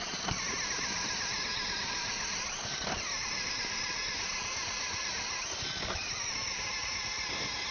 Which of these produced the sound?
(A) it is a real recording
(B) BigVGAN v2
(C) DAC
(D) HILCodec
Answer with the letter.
A